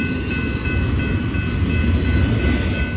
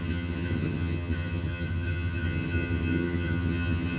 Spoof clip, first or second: second